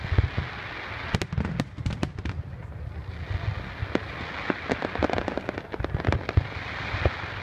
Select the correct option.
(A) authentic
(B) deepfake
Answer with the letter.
A